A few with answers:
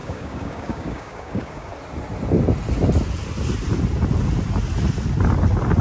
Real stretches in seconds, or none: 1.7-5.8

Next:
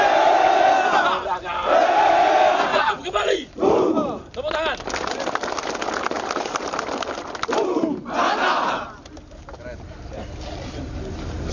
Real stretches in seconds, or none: 0.0-2.7; 3.5-11.5